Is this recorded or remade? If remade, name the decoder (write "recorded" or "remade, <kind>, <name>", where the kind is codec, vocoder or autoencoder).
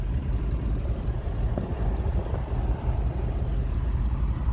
remade, vocoder, BigVGAN v2